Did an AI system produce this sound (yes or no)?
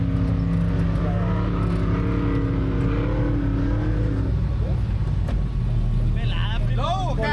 no